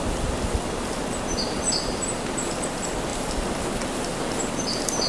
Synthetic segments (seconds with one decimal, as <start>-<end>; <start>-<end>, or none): none

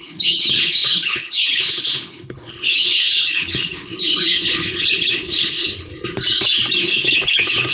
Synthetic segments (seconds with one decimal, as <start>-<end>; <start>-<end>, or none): 0.0-5.9; 6.8-7.7

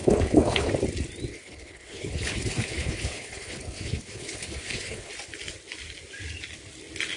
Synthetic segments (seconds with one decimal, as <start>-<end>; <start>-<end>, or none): 0.0-0.7; 1.3-5.1

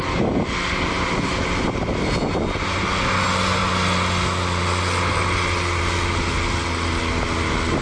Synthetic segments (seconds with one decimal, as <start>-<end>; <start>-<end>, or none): none